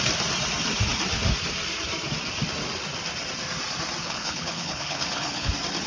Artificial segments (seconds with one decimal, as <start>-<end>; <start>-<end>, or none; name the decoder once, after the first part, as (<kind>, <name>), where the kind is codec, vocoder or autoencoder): 4.0-5.5 (codec, HILCodec)